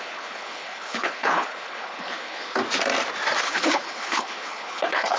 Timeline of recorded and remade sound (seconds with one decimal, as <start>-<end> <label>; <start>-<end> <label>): 0.0-2.6 remade; 2.6-3.4 recorded; 3.4-5.2 remade